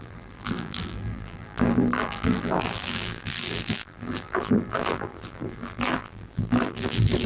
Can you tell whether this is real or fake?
fake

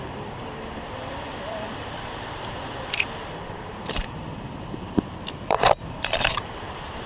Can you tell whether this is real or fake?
fake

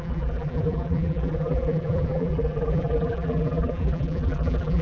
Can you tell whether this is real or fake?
fake